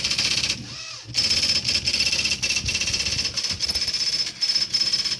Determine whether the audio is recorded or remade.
recorded